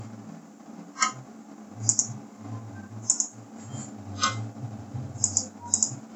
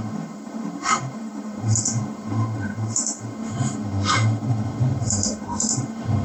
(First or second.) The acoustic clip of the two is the first